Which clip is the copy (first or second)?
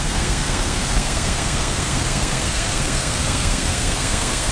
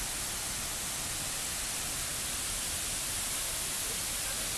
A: first